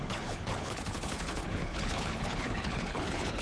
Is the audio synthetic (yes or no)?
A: yes